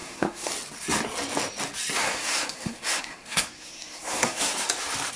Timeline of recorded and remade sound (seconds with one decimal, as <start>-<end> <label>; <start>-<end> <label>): 0.0-0.5 remade; 0.5-2.0 recorded; 2.0-4.4 remade; 4.4-5.2 recorded